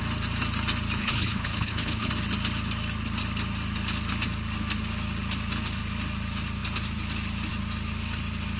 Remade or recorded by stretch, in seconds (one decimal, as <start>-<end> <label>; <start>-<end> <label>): 0.0-1.0 recorded; 1.0-2.1 remade; 2.1-8.6 recorded